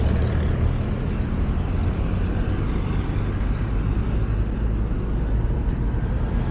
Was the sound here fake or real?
real